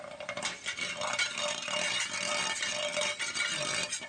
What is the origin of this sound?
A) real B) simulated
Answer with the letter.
A